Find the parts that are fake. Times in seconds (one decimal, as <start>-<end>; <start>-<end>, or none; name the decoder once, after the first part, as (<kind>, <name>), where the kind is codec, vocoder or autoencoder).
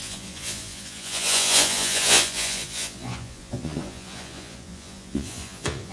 0.0-5.9 (vocoder, Vocos)